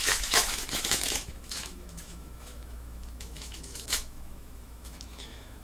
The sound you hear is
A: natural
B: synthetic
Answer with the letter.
B